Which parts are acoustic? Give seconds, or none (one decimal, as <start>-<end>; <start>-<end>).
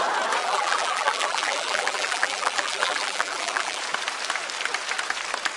0.0-0.4; 3.8-5.6